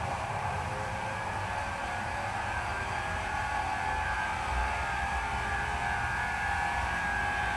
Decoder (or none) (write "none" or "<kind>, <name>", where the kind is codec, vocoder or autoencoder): vocoder, BigVGAN v2